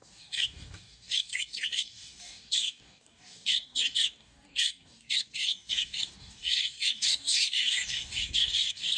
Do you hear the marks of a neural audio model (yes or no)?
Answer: yes